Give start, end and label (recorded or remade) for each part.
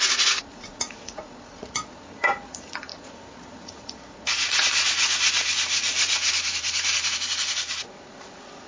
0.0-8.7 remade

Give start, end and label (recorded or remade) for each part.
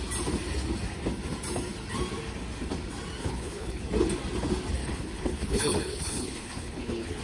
0.0-3.2 recorded; 3.2-3.8 remade; 3.8-4.8 recorded; 4.8-7.2 remade